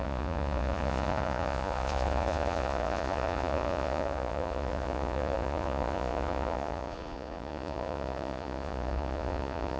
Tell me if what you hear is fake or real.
fake